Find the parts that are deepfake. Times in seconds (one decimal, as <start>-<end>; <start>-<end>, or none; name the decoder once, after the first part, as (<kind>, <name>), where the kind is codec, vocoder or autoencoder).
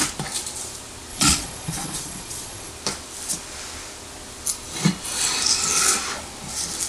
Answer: 1.1-2.7 (vocoder, Vocos)